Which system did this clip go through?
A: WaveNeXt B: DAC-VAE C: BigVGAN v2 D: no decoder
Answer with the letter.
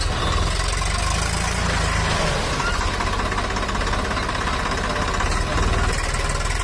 D